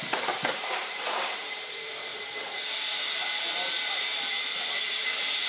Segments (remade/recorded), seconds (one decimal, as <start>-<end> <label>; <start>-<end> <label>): 0.0-5.5 remade